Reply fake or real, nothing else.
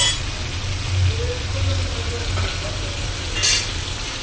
real